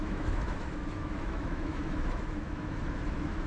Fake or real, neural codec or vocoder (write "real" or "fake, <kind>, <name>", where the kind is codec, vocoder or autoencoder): fake, autoencoder, DAC-VAE